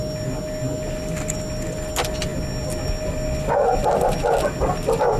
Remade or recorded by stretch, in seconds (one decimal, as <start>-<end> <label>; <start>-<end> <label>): 0.0-5.2 recorded